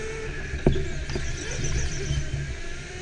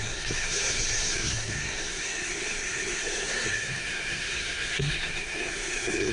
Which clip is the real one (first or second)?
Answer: first